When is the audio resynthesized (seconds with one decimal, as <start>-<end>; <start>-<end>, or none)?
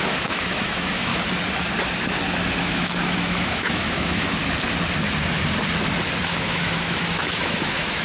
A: 0.0-1.1; 2.6-4.4; 6.3-8.0